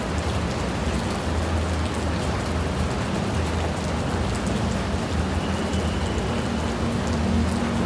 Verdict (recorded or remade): recorded